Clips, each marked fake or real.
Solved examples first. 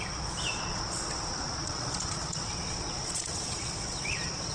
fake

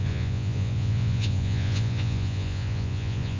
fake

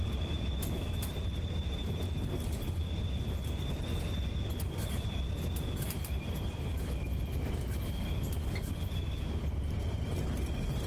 real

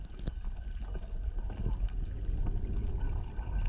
real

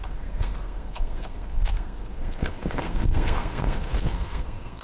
fake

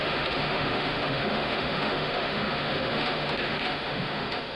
fake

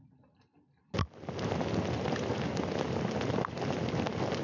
real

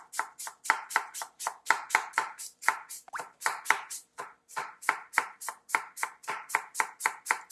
fake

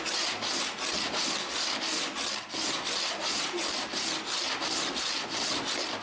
real